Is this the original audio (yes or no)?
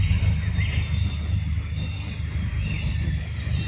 yes